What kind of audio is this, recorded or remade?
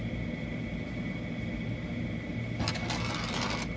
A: recorded